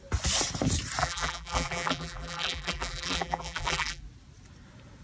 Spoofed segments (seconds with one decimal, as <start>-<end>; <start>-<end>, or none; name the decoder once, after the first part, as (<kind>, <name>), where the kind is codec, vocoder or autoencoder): 1.0-4.0 (vocoder, BigVGAN v2)